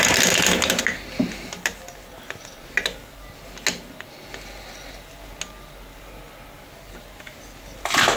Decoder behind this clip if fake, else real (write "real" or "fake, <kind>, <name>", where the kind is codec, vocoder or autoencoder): real